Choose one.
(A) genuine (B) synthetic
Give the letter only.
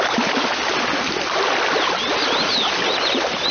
A